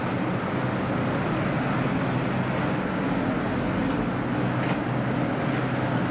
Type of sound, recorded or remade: recorded